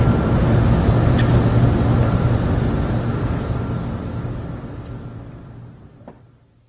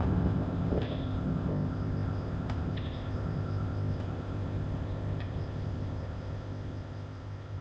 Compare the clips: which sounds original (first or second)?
first